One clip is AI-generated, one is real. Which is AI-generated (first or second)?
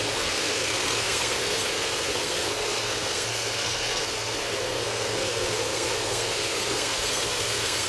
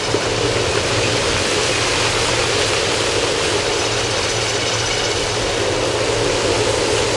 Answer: first